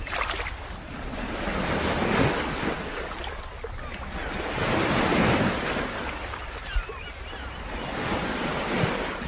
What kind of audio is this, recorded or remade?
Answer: recorded